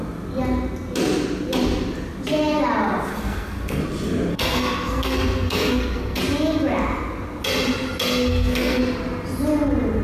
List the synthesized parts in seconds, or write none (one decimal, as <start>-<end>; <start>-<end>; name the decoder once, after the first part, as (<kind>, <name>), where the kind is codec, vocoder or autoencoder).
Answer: 3.1-3.8 (codec, SNAC); 4.3-6.2; 8.3-8.8